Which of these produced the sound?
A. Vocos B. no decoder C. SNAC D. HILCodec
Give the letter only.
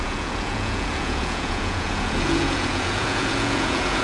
A